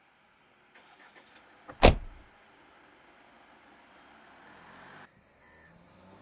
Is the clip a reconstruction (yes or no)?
no